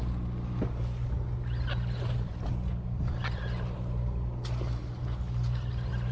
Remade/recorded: recorded